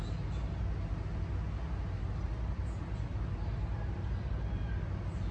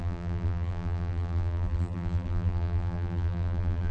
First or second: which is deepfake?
second